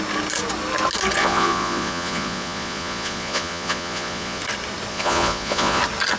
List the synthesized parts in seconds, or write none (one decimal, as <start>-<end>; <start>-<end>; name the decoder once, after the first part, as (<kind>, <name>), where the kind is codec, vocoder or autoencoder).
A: 1.2-4.4 (vocoder, Vocos); 4.9-5.8